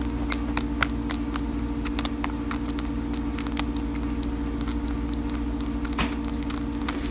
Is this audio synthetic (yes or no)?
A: no